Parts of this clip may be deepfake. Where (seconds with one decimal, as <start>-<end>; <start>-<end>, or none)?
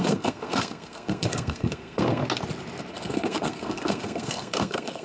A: 0.0-2.2; 2.9-5.0